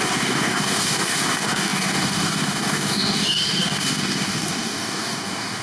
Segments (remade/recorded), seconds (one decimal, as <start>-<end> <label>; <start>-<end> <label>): 0.0-5.6 remade